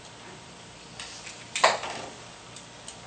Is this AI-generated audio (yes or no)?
no